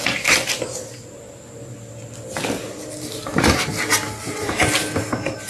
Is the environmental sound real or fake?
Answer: real